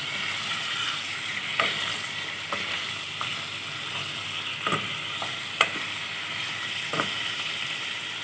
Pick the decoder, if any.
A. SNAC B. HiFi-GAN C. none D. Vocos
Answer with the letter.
C